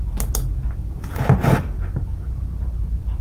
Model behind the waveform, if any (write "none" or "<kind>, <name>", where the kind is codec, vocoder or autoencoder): none